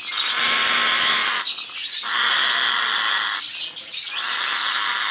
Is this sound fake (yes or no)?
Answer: no